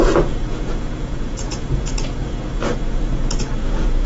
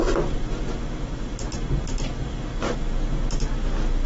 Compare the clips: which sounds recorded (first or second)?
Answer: second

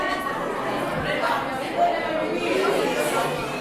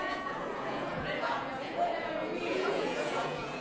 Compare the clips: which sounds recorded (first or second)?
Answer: first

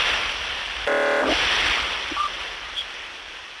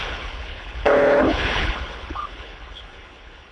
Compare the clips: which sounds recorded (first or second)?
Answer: first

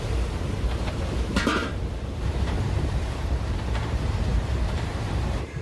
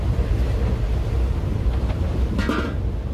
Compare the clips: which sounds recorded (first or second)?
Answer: second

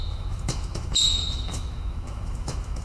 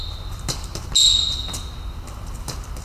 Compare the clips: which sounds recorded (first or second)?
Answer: second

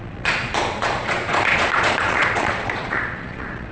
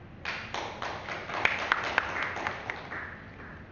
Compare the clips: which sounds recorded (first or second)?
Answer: second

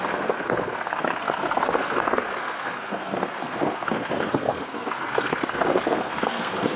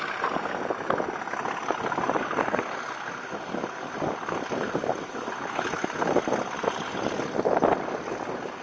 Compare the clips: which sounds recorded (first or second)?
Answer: second